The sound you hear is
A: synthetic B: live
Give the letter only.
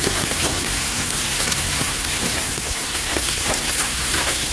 A